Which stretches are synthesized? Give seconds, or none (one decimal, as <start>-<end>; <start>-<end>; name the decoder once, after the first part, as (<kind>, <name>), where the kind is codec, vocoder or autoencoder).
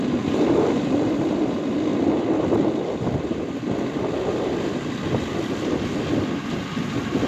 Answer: none